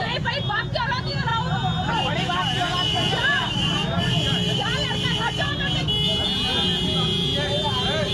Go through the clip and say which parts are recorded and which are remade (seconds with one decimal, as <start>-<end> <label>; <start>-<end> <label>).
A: 0.0-8.1 recorded